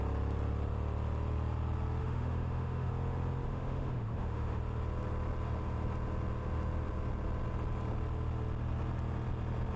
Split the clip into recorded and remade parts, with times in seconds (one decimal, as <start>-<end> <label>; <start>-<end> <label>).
0.0-2.0 recorded; 2.0-2.9 remade; 2.9-3.5 recorded; 3.5-4.6 remade; 4.6-9.8 recorded